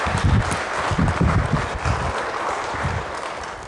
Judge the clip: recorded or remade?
recorded